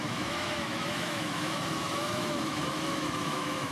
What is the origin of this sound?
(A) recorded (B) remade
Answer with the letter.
B